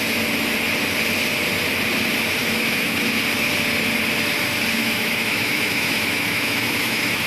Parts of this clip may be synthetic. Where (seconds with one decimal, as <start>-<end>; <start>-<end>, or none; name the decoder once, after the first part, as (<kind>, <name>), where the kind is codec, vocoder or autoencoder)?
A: 2.4-3.2 (autoencoder, DAC-VAE); 4.8-7.3